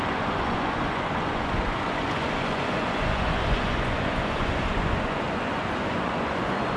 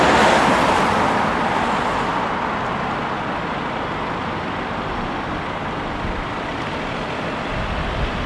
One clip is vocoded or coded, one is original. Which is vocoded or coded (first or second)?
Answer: first